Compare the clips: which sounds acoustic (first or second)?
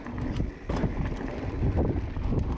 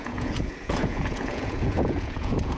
first